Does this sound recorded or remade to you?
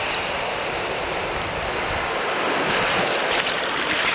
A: recorded